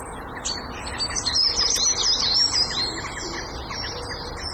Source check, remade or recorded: recorded